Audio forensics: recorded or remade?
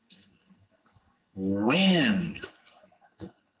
remade